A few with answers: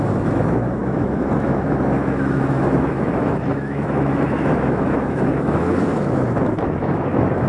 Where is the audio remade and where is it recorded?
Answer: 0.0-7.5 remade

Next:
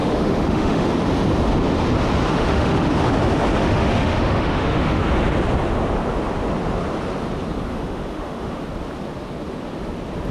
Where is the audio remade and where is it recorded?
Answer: 0.0-0.9 remade; 0.9-2.3 recorded; 2.3-2.9 remade; 2.9-3.6 recorded; 3.6-5.0 remade; 5.0-7.7 recorded; 7.7-8.6 remade; 8.6-10.3 recorded

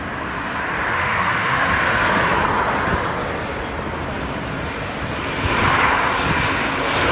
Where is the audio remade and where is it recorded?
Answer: 0.0-0.9 recorded; 0.9-1.7 remade; 1.7-7.1 recorded

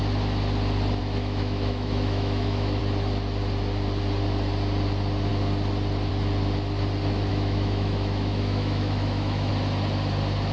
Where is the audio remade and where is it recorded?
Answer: 0.0-1.0 recorded; 1.0-2.8 remade; 2.8-7.3 recorded; 7.3-9.5 remade; 9.5-10.5 recorded

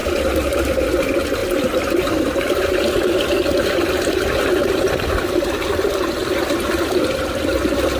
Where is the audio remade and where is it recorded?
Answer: 0.0-8.0 recorded

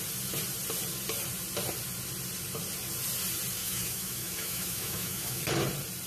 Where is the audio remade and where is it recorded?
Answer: 0.0-3.6 recorded; 3.6-5.4 remade; 5.4-6.1 recorded

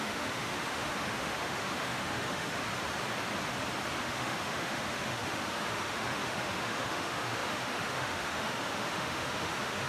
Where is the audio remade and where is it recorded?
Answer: 0.0-2.6 remade; 2.6-4.0 recorded; 4.0-9.9 remade